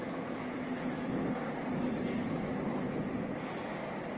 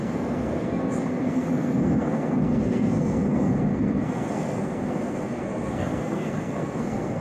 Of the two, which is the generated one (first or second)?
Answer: second